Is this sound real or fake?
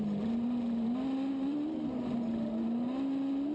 real